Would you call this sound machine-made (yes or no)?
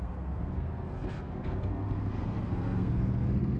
yes